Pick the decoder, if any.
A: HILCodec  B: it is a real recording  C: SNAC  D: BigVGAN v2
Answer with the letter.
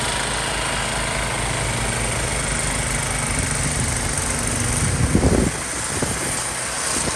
B